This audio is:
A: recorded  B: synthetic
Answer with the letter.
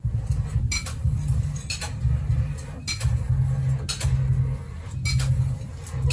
A